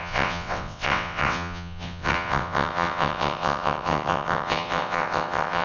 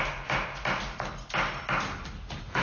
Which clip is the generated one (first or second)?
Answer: first